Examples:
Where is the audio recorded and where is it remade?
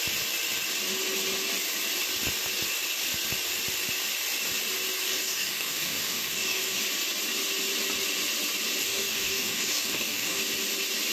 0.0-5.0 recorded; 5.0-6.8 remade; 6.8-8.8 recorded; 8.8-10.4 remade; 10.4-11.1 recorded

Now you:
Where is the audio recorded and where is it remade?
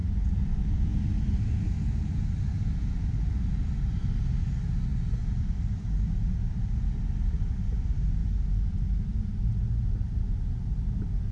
0.0-11.3 recorded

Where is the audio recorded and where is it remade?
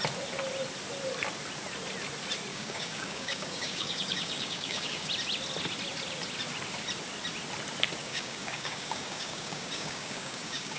0.0-2.5 recorded; 2.5-5.1 remade; 5.1-8.0 recorded; 8.0-10.8 remade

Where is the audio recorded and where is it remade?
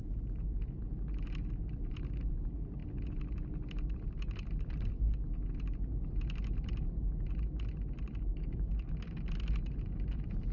0.0-8.3 recorded; 8.3-8.9 remade; 8.9-10.5 recorded